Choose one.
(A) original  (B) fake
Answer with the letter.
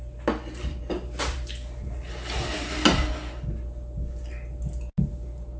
A